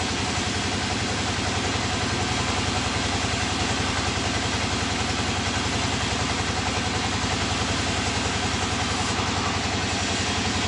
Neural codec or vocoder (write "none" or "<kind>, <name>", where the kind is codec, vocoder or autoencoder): none